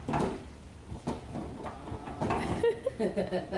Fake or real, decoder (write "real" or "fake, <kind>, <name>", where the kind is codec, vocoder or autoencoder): real